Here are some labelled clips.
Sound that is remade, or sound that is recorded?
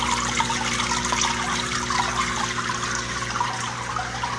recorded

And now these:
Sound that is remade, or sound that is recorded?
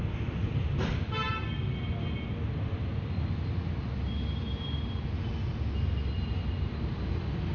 recorded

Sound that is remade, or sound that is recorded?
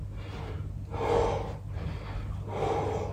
recorded